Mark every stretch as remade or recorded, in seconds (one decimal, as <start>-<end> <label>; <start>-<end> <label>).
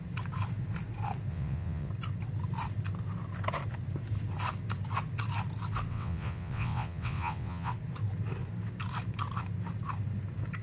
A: 0.0-1.3 recorded; 1.3-1.9 remade; 1.9-5.9 recorded; 5.9-7.7 remade; 7.7-10.6 recorded